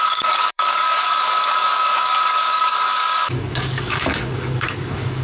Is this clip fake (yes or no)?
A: yes